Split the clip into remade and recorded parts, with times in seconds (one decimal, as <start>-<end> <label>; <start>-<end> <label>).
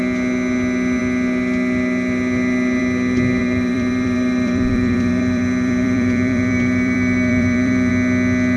0.0-3.4 recorded; 3.4-7.9 remade; 7.9-8.6 recorded